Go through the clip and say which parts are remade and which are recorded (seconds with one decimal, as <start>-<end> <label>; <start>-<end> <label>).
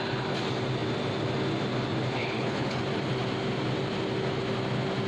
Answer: 0.0-2.2 recorded; 2.2-2.8 remade; 2.8-5.1 recorded